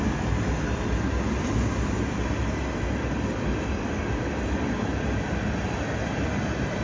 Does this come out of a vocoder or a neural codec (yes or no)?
no